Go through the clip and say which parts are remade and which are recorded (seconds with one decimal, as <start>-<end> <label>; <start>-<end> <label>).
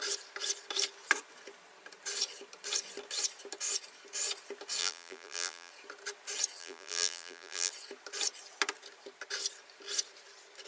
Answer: 0.0-4.8 recorded; 4.8-5.7 remade; 5.7-6.6 recorded; 6.6-7.7 remade; 7.7-10.7 recorded